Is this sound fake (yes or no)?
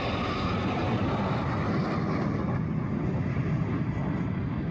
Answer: no